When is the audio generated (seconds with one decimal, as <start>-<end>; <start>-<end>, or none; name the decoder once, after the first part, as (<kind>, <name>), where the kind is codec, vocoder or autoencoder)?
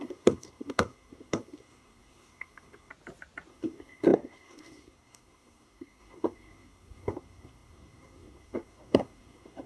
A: 0.0-2.9 (codec, SNAC); 3.5-9.7